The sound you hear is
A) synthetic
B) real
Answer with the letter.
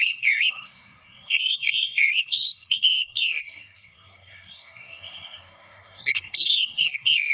A